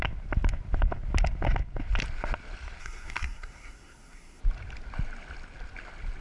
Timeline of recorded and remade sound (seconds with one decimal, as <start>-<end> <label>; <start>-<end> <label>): 0.0-2.8 recorded; 2.8-4.4 remade; 4.4-6.2 recorded